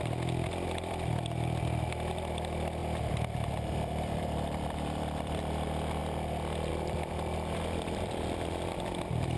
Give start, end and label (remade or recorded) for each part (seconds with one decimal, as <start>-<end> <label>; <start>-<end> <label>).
0.0-6.0 remade; 6.0-6.7 recorded; 6.7-9.4 remade